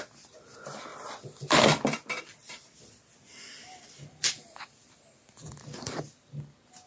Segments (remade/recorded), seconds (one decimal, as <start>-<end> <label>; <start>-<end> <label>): 0.0-0.9 recorded; 0.9-2.2 remade; 2.2-3.6 recorded; 3.6-6.0 remade; 6.0-6.9 recorded